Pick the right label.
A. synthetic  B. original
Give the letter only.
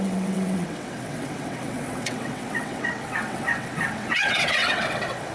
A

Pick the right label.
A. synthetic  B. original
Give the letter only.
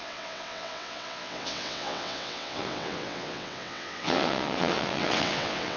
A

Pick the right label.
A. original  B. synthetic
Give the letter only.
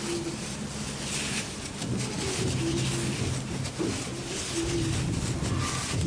A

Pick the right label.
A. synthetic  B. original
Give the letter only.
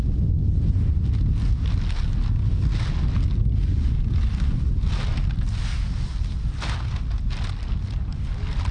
B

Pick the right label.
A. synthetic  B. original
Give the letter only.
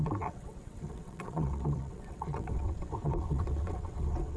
A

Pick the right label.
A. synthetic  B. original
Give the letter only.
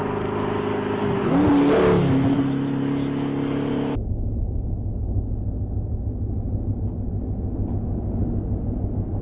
B